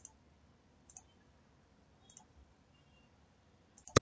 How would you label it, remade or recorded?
recorded